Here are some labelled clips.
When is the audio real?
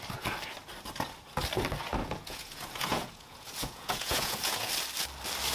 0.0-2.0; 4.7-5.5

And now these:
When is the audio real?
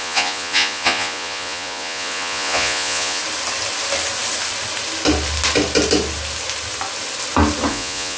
3.2-7.7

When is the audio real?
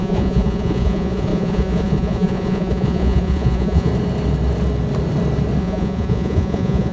3.9-5.6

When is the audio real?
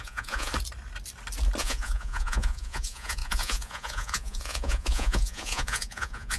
0.5-1.6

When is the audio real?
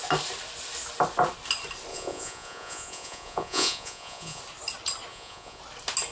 0.0-1.9; 4.4-5.1; 5.6-6.1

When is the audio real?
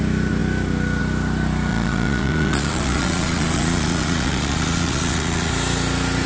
0.0-1.7; 5.5-6.3